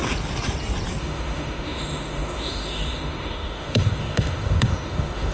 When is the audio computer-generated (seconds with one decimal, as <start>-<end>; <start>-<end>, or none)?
1.0-5.3